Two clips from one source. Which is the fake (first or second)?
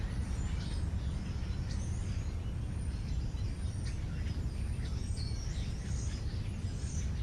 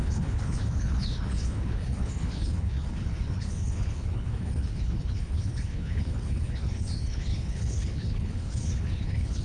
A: second